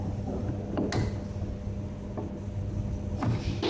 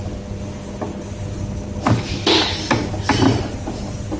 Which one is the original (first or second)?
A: first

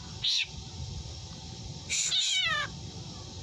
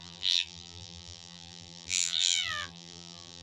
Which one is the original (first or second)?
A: first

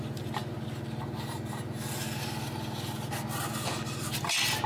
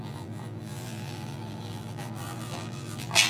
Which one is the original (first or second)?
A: first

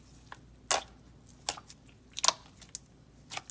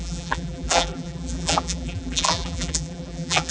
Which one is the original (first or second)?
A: first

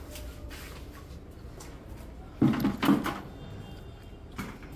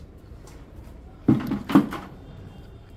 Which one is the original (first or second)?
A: first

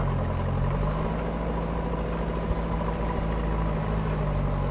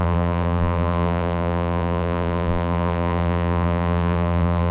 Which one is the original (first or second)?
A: first